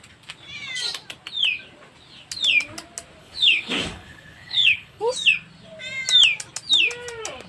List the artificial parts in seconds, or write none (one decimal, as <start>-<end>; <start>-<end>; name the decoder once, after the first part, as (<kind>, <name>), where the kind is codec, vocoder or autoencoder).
3.2-5.0 (codec, HILCodec)